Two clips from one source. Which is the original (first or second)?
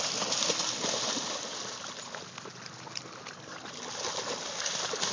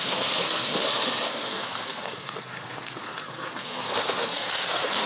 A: first